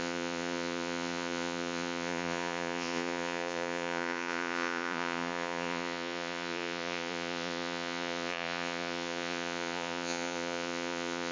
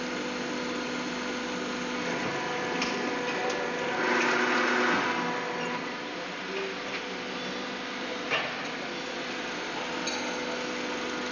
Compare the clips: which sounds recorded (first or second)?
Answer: second